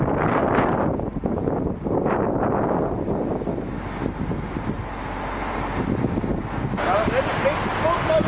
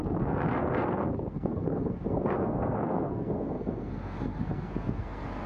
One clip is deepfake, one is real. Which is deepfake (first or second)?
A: second